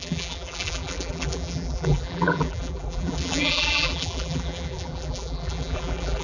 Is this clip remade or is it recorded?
remade